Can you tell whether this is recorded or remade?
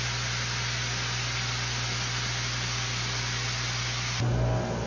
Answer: recorded